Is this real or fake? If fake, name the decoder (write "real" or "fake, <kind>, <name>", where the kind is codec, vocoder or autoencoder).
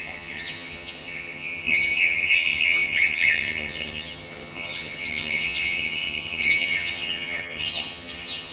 fake, vocoder, HiFi-GAN